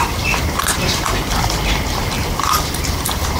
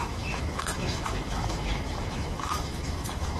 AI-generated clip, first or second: second